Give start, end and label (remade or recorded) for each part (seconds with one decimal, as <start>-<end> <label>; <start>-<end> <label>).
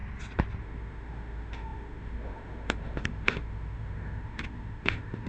0.0-0.6 recorded; 0.6-5.3 remade